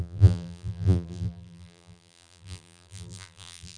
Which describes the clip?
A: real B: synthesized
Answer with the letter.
B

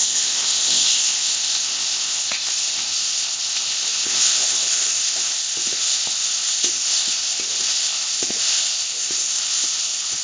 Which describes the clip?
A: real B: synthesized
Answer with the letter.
B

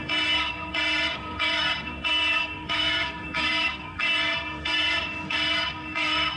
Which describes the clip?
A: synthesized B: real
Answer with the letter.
A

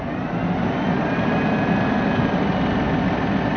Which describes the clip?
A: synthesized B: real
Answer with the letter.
B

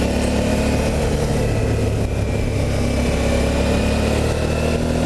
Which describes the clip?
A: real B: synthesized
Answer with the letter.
A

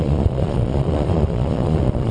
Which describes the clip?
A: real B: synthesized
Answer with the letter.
B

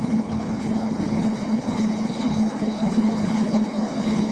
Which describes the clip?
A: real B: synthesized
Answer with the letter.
B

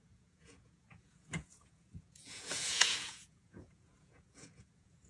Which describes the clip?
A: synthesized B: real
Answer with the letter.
A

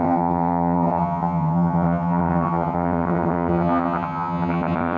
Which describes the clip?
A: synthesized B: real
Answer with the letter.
A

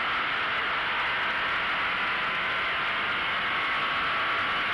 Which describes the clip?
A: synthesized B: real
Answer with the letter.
B